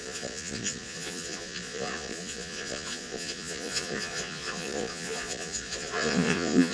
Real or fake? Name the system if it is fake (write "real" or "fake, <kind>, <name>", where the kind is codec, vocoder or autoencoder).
fake, vocoder, Vocos